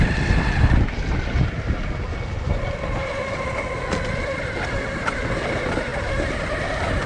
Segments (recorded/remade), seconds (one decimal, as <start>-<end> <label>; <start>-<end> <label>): 0.0-7.1 recorded